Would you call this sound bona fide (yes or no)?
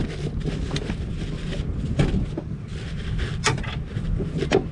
yes